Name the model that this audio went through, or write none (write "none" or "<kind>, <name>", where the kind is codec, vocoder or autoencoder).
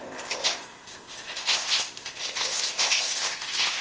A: codec, ZipCodec